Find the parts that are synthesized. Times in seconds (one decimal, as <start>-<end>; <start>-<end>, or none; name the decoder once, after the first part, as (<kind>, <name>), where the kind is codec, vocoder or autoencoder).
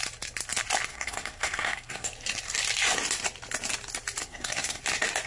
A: 0.9-2.1 (codec, SNAC); 4.2-4.8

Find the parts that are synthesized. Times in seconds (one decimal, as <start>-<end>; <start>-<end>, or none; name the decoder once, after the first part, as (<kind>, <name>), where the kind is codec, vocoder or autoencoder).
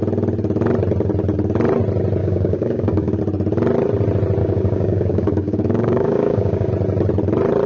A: 2.2-3.2 (codec, DAC); 4.4-6.7